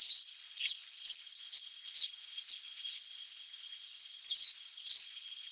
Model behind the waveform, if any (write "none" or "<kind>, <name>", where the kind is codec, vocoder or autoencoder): codec, HILCodec